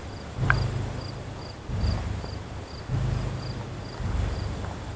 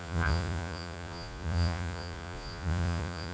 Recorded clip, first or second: first